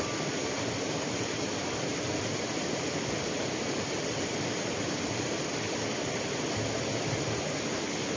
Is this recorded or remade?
recorded